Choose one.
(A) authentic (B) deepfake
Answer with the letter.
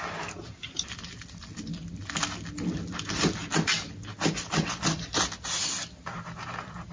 A